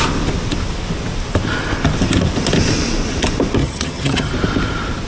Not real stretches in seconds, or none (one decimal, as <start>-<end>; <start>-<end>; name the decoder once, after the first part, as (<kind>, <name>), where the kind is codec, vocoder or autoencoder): 3.6-4.3 (vocoder, HiFi-GAN)